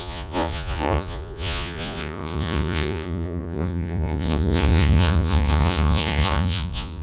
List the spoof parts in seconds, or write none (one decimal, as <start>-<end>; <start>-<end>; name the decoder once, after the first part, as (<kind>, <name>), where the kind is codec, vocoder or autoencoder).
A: 0.0-7.0 (vocoder, Vocos)